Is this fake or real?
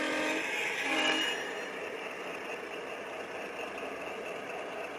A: real